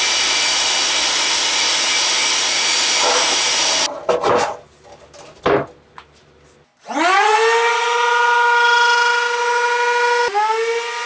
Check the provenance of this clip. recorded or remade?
recorded